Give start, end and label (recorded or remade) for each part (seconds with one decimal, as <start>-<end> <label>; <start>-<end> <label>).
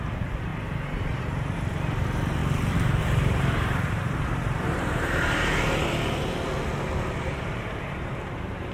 0.0-2.4 remade; 2.4-3.0 recorded; 3.0-5.5 remade; 5.5-7.2 recorded; 7.2-8.7 remade